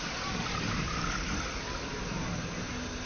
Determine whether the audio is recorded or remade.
recorded